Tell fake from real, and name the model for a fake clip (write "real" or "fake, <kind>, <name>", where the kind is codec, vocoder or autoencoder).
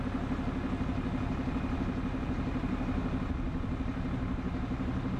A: real